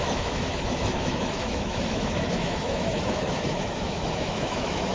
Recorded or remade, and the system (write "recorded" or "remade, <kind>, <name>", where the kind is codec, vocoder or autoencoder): remade, autoencoder, DAC-VAE